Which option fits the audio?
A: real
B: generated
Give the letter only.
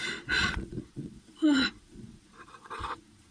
B